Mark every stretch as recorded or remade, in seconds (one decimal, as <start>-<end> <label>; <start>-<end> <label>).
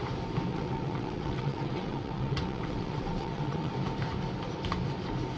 0.0-0.5 recorded; 0.5-3.7 remade; 3.7-5.4 recorded